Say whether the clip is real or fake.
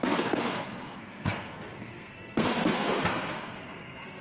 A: fake